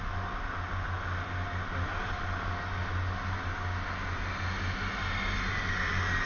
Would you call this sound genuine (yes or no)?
yes